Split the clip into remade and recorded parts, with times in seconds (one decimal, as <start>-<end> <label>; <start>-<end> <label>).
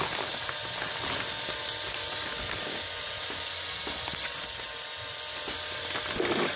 0.0-6.6 recorded